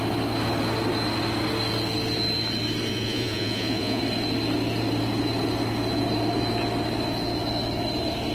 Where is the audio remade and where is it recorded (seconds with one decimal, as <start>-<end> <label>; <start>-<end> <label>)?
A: 0.0-2.9 recorded; 2.9-4.0 remade; 4.0-8.3 recorded